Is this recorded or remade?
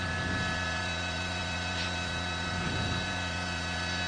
recorded